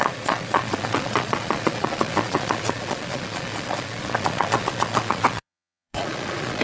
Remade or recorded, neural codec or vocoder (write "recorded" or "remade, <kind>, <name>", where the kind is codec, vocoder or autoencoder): remade, vocoder, Vocos